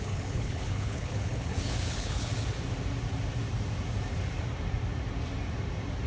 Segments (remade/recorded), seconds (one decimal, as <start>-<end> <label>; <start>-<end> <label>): 0.0-2.3 remade; 2.3-6.1 recorded